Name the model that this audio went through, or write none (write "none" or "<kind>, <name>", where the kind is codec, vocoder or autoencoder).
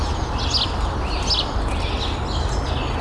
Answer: none